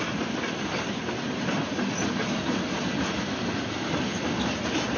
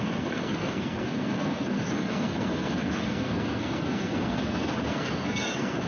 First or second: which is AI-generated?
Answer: second